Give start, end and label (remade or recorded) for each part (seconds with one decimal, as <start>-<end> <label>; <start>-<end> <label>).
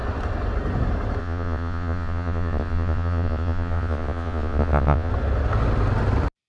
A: 0.0-1.2 recorded; 1.2-5.1 remade; 5.1-6.5 recorded